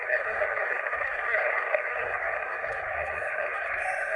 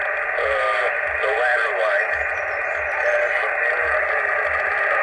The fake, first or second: first